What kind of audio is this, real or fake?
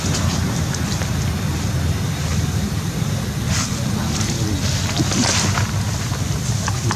real